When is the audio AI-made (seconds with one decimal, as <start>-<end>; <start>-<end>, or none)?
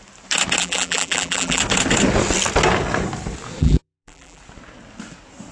0.6-1.6; 3.6-4.4